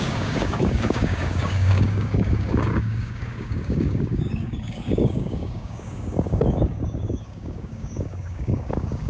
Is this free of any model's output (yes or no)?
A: no